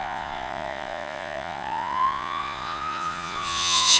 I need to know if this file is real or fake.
fake